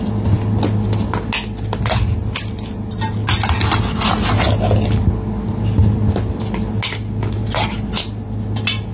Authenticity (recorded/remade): recorded